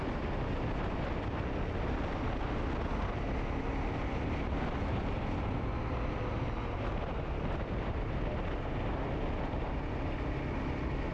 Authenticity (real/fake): real